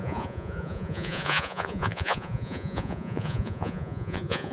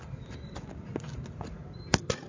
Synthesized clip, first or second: first